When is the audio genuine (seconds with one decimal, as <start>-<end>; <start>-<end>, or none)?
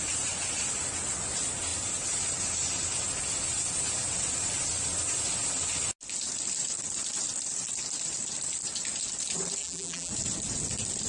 0.0-9.6; 10.1-11.1